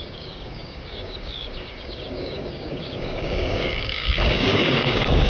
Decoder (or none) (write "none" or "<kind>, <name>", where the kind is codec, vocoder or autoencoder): codec, DAC